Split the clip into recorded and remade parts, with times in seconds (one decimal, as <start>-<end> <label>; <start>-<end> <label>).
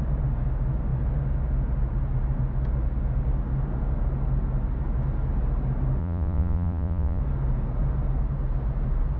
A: 0.0-6.0 recorded; 6.0-7.2 remade; 7.2-9.2 recorded